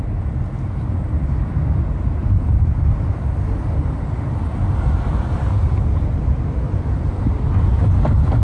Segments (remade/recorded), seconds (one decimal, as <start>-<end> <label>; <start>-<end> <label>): 0.0-2.2 recorded; 2.2-7.1 remade; 7.1-8.4 recorded